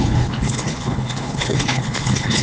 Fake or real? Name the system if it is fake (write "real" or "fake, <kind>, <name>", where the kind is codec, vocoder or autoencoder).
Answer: fake, codec, HILCodec